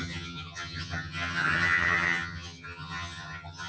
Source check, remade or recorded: remade